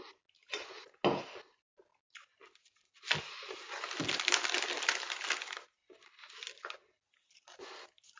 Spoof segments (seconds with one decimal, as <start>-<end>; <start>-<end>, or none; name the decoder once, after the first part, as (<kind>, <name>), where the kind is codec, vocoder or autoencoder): none